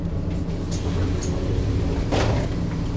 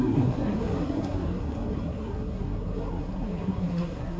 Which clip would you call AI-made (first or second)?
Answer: second